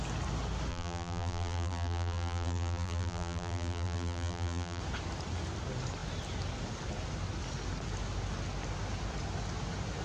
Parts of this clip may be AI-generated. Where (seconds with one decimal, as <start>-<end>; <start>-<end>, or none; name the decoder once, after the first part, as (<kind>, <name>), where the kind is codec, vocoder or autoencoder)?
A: 0.7-4.8 (vocoder, BigVGAN v2)